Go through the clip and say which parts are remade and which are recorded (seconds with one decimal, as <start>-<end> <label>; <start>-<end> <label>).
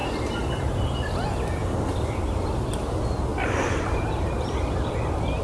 0.0-3.3 recorded; 3.3-4.9 remade; 4.9-5.4 recorded